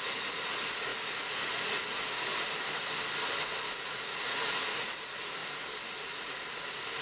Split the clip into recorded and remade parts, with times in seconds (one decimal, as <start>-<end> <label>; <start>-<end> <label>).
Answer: 0.0-2.3 remade; 2.3-3.8 recorded; 3.8-5.4 remade; 5.4-6.0 recorded; 6.0-7.0 remade